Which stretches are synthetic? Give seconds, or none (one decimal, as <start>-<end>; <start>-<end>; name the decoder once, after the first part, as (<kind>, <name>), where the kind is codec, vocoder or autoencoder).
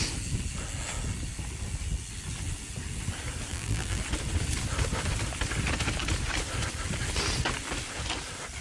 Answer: 3.5-4.0 (vocoder, BigVGAN v2)